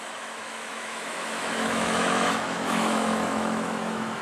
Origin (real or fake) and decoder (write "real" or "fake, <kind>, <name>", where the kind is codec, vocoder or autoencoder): fake, autoencoder, DAC-VAE